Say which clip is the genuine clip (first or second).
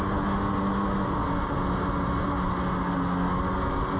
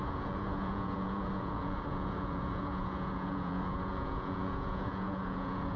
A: first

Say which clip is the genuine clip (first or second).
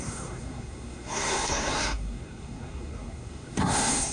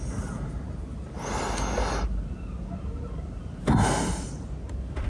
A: second